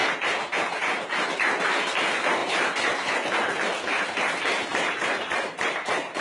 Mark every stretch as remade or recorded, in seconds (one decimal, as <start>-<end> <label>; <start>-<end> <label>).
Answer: 0.0-1.7 remade; 1.7-2.4 recorded; 2.4-3.1 remade; 3.1-4.7 recorded; 4.7-6.2 remade